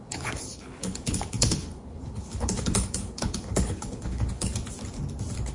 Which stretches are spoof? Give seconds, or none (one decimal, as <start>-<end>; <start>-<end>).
0.0-4.5